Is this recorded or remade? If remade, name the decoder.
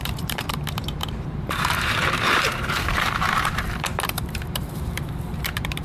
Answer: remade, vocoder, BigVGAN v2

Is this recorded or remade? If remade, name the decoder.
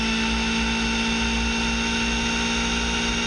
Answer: recorded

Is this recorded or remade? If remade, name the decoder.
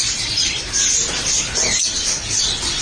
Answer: remade, vocoder, BigVGAN v2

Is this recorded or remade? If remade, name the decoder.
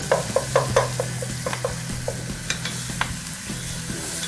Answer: recorded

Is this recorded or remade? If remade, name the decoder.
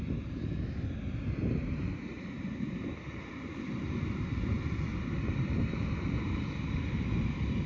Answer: remade, vocoder, BigVGAN v2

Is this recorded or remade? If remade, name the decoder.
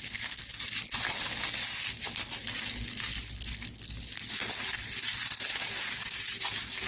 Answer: recorded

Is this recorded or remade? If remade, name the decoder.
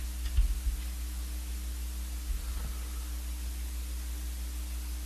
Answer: recorded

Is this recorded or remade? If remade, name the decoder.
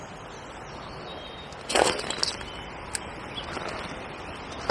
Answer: recorded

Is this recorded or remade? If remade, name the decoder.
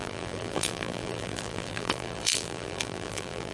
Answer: remade, vocoder, BigVGAN v2